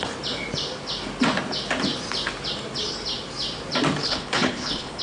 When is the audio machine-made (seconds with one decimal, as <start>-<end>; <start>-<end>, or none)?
4.0-5.0